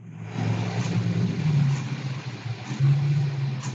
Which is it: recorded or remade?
recorded